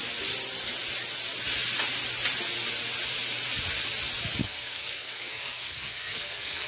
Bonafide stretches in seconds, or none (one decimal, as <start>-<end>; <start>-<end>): 0.0-4.4